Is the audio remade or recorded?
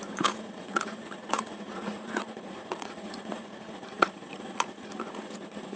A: remade